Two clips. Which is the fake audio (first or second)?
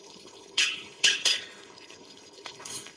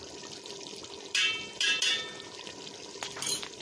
first